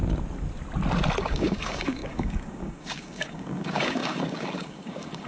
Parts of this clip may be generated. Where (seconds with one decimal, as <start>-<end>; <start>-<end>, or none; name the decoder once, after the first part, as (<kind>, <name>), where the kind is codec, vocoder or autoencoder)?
1.2-5.3 (codec, DAC)